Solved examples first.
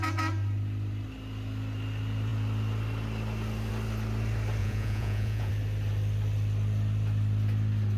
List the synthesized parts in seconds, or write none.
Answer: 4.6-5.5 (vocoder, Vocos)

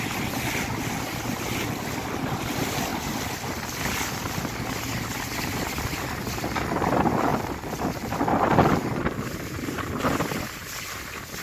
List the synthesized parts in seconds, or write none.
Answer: none

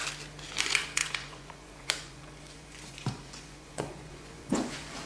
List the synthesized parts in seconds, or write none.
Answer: 0.6-5.1 (vocoder, Vocos)

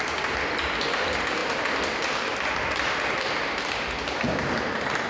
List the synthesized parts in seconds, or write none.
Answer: none

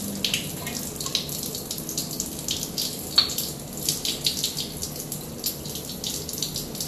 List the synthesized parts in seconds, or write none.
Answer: none